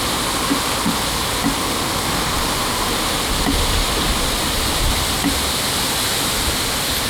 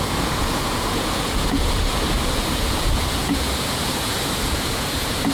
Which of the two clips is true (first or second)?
first